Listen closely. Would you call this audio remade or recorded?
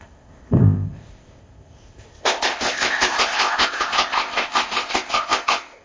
remade